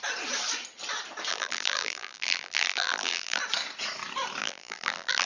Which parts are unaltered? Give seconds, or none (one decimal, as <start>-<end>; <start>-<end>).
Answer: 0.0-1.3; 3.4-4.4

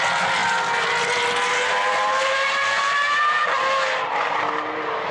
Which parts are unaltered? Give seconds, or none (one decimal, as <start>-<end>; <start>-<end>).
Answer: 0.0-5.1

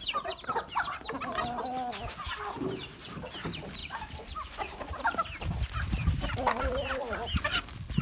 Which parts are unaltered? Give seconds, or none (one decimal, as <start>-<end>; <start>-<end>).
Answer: 0.0-3.8; 7.0-8.0

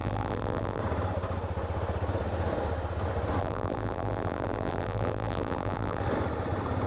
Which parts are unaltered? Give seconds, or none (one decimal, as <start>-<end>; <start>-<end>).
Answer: 0.8-3.4; 6.0-6.9

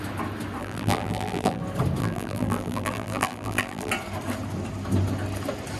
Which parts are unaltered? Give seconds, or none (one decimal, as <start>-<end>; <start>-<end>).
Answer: 0.0-0.6; 1.6-2.0; 3.9-5.8

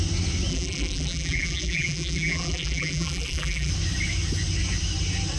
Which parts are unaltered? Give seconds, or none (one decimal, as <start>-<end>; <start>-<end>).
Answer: 0.0-0.5; 3.7-5.4